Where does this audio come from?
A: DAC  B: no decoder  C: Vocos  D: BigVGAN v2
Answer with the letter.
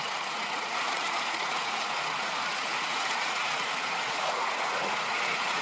C